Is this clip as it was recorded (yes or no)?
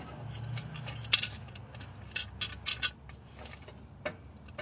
yes